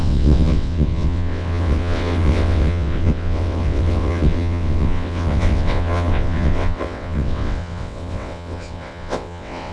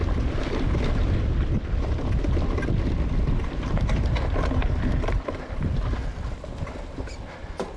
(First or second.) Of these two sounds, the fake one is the first